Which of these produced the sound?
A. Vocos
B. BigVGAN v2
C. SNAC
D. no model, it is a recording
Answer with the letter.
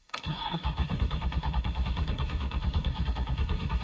C